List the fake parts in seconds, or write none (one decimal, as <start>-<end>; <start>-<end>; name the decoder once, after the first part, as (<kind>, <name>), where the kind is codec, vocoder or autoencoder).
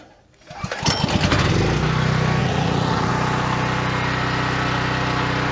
2.4-3.1 (vocoder, Vocos)